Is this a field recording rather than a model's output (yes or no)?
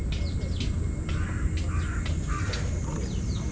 yes